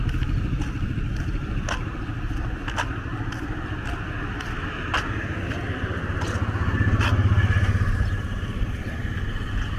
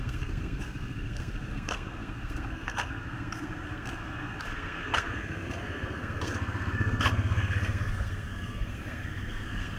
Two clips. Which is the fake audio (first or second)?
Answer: second